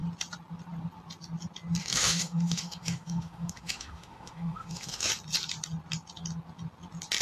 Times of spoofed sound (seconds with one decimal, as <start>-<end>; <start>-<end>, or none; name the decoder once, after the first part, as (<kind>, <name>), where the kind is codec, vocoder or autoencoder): 1.8-5.1 (autoencoder, DAC-VAE)